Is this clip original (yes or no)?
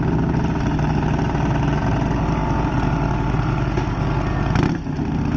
yes